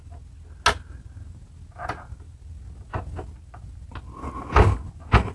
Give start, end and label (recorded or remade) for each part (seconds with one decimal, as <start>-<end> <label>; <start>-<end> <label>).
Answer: 0.0-5.3 recorded